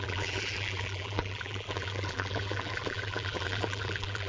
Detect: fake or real fake